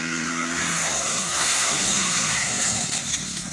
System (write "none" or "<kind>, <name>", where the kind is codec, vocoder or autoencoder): codec, SNAC